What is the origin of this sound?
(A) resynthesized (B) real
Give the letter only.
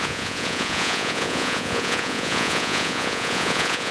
A